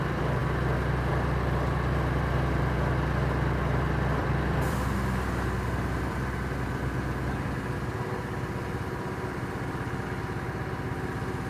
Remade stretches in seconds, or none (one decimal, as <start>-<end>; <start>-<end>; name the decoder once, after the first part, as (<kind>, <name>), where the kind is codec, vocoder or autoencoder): 4.2-8.1 (vocoder, BigVGAN v2)